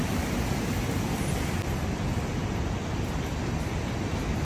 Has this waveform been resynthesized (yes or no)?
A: no